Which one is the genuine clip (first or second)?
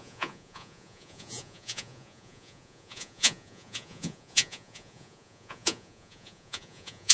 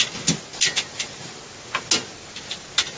second